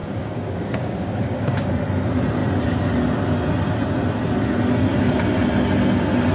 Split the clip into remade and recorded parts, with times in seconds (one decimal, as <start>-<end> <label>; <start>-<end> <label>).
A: 0.0-1.7 remade; 1.7-6.3 recorded